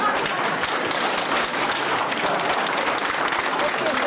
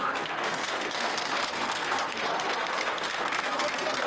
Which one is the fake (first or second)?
second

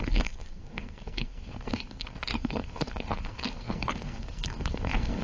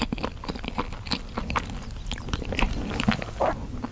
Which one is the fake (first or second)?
first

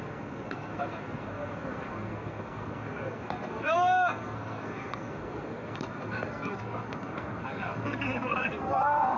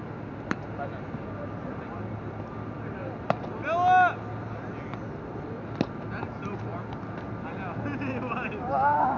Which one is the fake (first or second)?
first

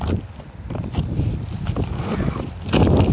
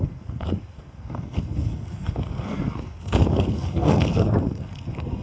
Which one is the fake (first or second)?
second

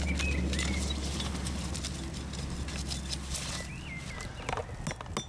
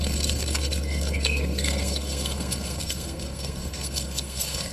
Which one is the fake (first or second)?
second